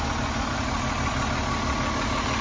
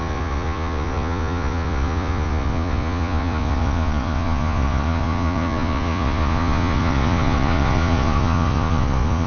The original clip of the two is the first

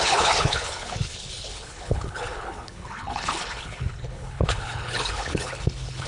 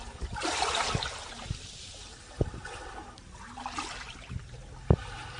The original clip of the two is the second